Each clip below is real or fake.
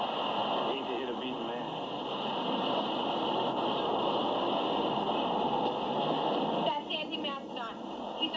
real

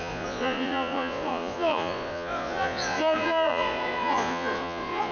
fake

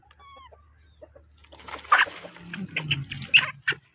real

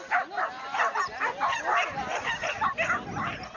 real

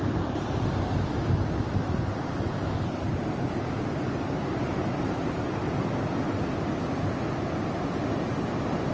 real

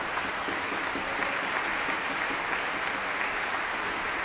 real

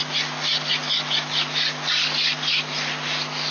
real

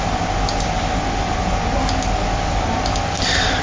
real